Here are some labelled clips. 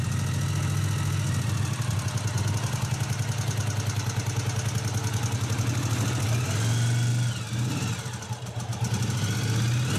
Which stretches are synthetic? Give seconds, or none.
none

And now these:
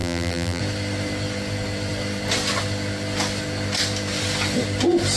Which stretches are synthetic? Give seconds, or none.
0.0-0.6 (vocoder, BigVGAN v2)

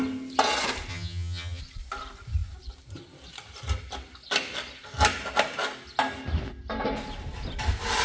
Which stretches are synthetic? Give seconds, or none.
0.9-1.6 (vocoder, HiFi-GAN)